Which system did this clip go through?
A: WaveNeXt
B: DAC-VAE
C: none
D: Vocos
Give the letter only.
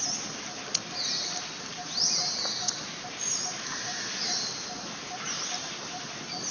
C